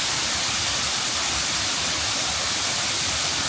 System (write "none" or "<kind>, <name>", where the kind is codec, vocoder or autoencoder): none